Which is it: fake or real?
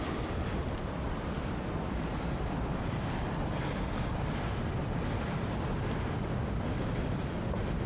fake